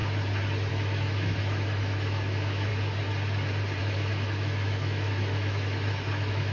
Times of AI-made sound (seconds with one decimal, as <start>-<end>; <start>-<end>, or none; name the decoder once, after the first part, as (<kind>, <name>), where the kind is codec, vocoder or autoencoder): 0.7-2.7 (autoencoder, DAC-VAE); 3.8-6.5